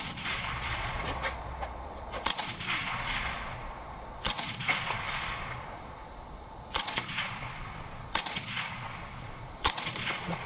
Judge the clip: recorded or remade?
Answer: remade